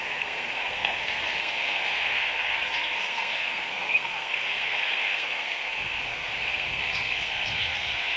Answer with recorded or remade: remade